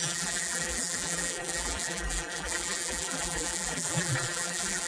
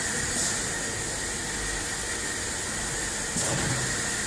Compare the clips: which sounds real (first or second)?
second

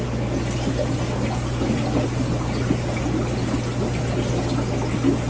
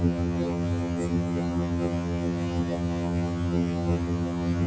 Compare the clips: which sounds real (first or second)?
first